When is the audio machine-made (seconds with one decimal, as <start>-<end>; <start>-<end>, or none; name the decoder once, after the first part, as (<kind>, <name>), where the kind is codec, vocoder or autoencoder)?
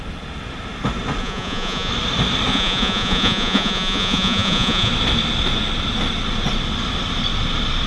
1.2-1.9 (vocoder, Vocos); 2.5-4.9